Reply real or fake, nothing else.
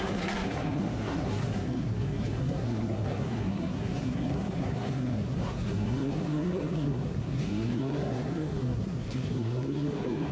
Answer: fake